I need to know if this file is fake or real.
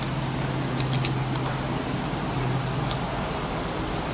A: real